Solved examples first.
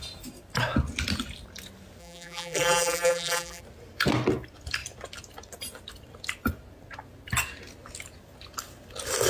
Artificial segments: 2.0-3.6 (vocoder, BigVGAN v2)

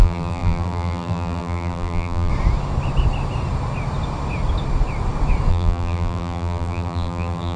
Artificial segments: 0.0-2.3 (vocoder, BigVGAN v2); 5.5-7.6

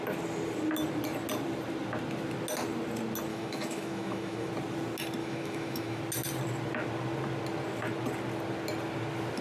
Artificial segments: 3.3-4.5 (autoencoder, DAC-VAE); 5.2-6.0

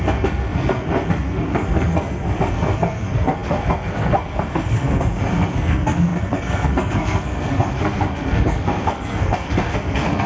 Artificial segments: 0.0-10.3 (codec, SNAC)

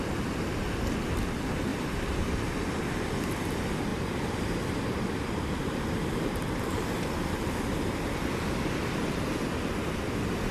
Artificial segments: 1.7-2.7 (vocoder, BigVGAN v2); 3.9-7.6

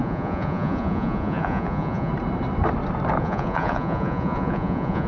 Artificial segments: 0.0-2.1 (vocoder, Vocos); 3.2-5.1

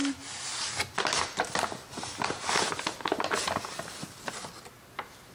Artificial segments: none